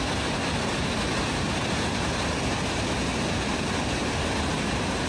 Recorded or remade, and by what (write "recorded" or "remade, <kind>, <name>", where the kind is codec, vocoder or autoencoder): recorded